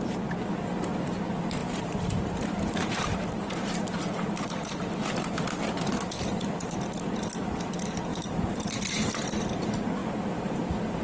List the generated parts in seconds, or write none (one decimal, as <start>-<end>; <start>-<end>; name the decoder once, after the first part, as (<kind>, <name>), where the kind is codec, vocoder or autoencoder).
1.6-3.8 (vocoder, BigVGAN v2); 8.1-8.7; 10.0-10.6